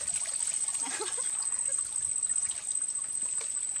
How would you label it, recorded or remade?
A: recorded